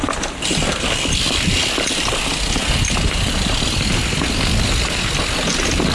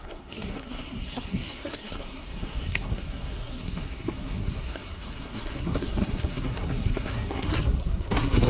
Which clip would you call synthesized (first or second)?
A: second